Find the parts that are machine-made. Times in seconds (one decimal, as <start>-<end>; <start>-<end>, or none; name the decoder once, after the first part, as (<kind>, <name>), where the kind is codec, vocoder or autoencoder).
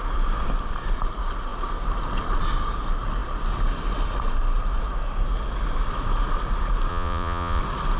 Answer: 6.9-7.6 (vocoder, Vocos)